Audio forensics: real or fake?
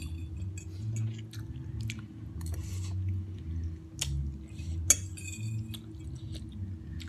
real